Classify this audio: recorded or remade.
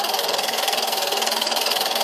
remade